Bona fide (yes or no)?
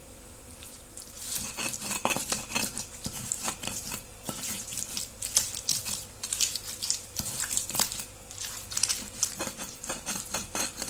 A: no